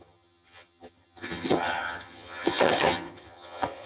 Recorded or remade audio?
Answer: remade